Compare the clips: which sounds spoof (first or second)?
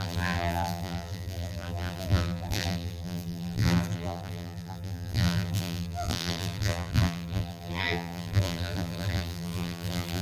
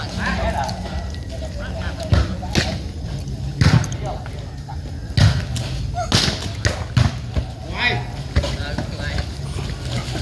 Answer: first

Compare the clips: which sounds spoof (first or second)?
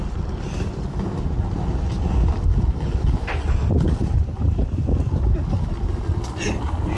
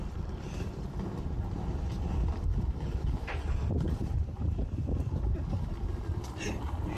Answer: second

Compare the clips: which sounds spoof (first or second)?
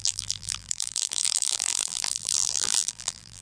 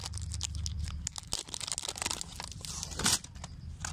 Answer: first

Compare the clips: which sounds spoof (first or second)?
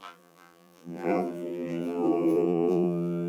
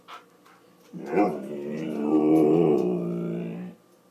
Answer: first